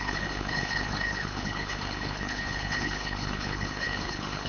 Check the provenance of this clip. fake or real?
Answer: fake